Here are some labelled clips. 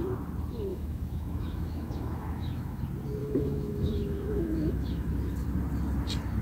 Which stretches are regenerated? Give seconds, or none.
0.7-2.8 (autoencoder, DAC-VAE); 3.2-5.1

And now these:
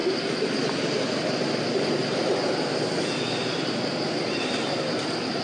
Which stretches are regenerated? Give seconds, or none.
none